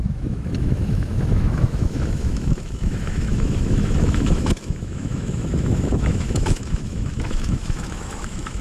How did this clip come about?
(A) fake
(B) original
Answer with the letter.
A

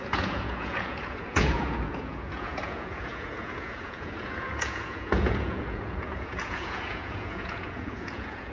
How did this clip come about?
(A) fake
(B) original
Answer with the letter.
A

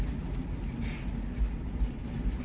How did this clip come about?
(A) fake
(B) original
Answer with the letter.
B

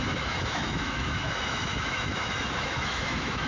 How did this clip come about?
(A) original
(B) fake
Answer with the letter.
B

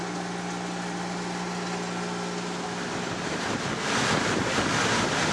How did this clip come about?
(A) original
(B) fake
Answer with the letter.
A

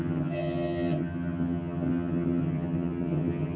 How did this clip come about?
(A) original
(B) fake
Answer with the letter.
B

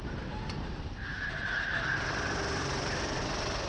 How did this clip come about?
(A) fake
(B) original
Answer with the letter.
B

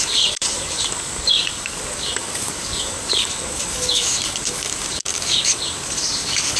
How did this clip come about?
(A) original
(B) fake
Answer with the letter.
B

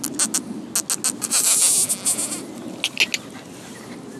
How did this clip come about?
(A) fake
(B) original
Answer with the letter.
B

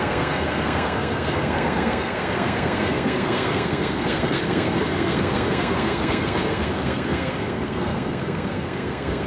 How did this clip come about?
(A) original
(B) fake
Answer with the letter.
B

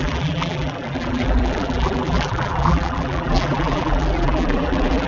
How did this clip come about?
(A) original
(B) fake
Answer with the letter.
B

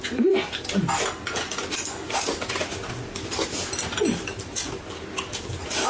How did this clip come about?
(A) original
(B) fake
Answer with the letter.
A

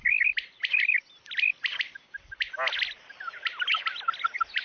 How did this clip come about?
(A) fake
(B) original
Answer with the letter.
B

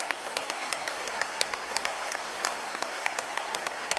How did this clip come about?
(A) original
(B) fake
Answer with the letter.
B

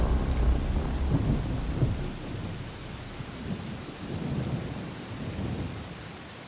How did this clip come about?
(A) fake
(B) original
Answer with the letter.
B